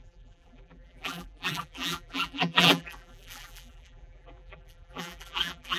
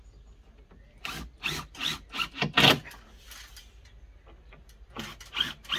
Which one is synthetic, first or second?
first